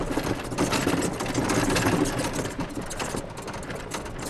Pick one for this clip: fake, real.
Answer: real